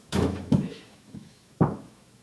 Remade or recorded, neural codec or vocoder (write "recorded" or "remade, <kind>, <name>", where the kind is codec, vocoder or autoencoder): remade, autoencoder, DAC-VAE